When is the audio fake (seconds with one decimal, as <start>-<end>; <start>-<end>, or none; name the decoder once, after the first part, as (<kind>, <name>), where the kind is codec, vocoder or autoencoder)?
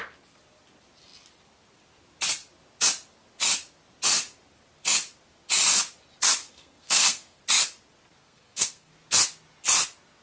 6.4-7.4 (codec, SNAC); 8.2-8.9